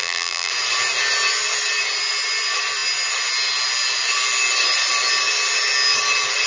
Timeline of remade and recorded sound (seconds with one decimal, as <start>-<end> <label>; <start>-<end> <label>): 0.0-0.5 remade; 0.5-6.5 recorded